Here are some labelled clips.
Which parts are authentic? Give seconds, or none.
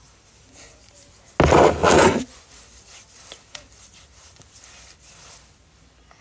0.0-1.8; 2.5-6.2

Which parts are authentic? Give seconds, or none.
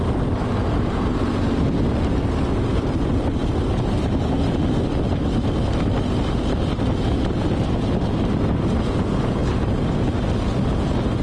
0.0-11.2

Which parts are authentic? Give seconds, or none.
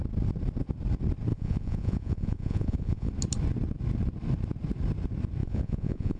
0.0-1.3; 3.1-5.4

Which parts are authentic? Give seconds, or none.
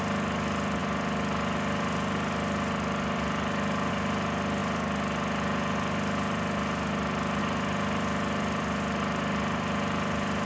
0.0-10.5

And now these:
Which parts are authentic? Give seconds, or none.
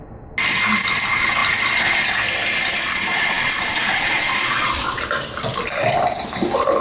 0.0-3.1; 5.0-6.8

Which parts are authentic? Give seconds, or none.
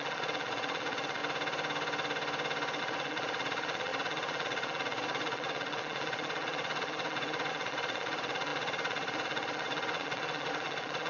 1.2-2.8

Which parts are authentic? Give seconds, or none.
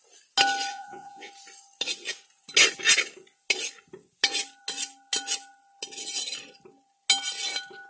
0.0-0.7; 1.3-7.9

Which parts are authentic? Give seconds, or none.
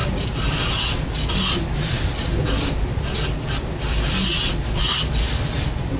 0.0-6.0